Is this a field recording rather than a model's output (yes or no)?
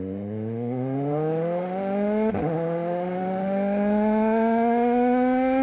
no